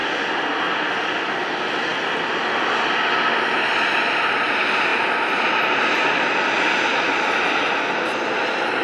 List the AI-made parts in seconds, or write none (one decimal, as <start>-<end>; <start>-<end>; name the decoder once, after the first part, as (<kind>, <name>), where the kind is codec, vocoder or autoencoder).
4.9-6.5 (vocoder, BigVGAN v2)